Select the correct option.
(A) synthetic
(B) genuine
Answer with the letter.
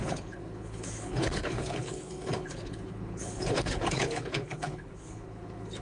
A